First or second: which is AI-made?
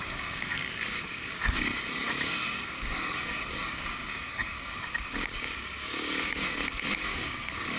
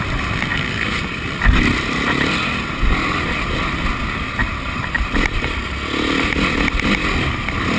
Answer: first